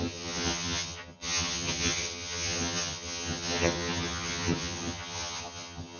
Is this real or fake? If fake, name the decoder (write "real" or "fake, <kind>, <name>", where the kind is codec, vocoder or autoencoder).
fake, vocoder, HiFi-GAN